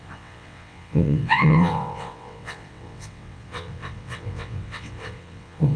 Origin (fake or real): fake